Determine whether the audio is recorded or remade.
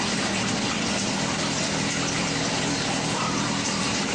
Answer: remade